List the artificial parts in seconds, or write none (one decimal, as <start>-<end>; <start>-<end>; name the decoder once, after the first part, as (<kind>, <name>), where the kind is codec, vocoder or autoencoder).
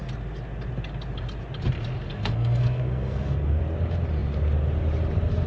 2.1-3.6 (codec, SNAC)